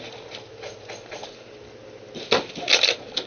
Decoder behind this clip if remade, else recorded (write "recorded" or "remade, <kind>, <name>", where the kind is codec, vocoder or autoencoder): recorded